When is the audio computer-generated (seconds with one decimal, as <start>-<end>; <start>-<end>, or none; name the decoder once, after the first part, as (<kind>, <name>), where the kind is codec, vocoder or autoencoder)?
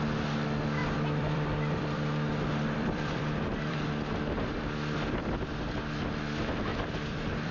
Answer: 0.8-3.9 (vocoder, BigVGAN v2); 6.7-7.5